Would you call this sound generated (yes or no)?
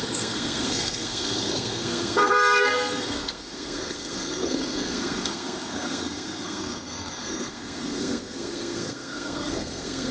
yes